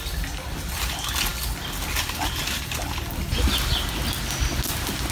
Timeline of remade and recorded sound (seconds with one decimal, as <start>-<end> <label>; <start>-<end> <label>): 0.0-5.1 recorded